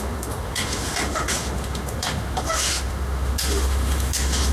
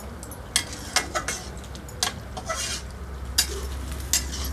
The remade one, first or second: first